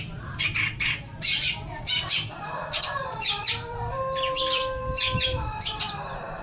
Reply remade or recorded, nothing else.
remade